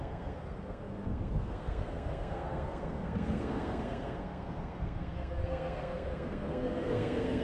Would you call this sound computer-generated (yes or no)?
yes